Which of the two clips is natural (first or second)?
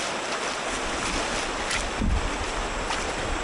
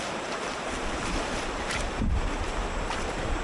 first